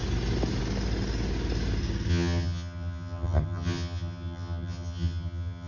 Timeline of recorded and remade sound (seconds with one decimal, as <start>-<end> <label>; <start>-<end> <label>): 0.0-2.1 recorded; 2.1-5.7 remade